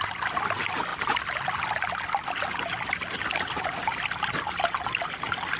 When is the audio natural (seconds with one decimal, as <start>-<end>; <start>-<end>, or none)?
0.0-5.6

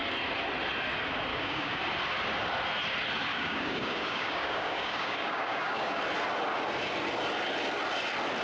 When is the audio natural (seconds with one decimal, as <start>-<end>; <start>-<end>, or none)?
0.0-1.3; 1.8-3.3; 6.0-8.4

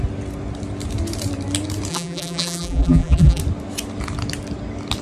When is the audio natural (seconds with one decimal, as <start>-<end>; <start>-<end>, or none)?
0.0-1.9; 3.4-5.0

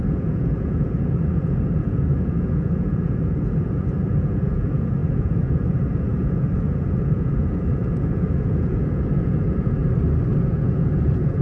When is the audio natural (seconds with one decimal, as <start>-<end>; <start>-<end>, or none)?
9.8-10.4

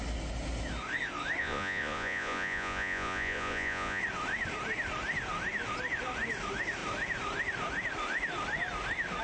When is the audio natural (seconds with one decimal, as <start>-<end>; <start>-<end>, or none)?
0.0-1.4; 4.0-9.2